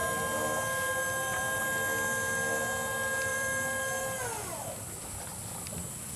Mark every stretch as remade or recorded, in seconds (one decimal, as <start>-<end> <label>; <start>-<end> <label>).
0.0-3.3 recorded; 3.3-4.0 remade; 4.0-6.2 recorded